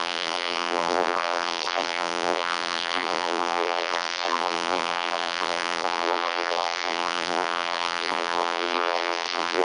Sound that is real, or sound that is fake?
fake